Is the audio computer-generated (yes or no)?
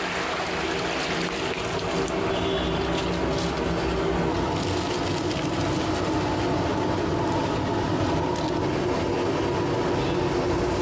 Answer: no